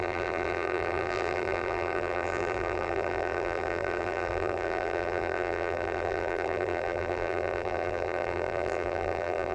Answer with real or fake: fake